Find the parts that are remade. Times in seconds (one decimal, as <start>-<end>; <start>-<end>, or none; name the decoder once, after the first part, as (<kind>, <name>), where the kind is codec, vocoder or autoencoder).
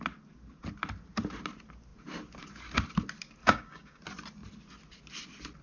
3.4-4.0 (codec, DAC)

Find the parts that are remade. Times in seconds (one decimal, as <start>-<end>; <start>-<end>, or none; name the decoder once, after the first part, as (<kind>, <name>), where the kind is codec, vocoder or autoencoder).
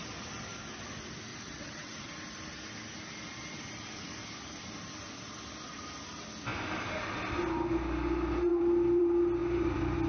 1.3-2.1 (vocoder, WaveNeXt)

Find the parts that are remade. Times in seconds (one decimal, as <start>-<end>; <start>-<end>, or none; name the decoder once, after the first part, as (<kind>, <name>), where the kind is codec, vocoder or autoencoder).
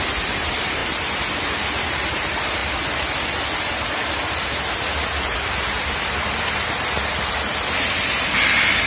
none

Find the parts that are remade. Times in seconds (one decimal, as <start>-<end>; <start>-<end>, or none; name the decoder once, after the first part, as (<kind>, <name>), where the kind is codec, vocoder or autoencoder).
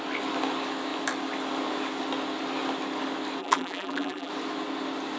3.4-4.3 (vocoder, BigVGAN v2)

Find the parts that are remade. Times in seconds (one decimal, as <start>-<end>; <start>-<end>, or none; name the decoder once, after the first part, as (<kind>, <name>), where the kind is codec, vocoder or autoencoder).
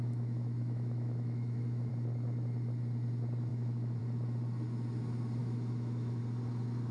0.0-1.9 (autoencoder, DAC-VAE); 3.5-4.0; 5.4-6.2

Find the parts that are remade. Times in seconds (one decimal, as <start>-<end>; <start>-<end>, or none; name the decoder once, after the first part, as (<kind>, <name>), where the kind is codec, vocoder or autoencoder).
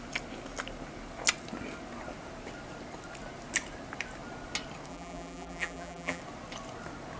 4.9-6.2 (vocoder, BigVGAN v2)